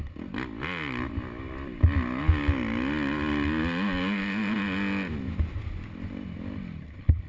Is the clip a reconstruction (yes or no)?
no